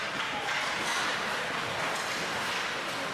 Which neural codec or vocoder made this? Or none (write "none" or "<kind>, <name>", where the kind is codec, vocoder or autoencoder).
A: none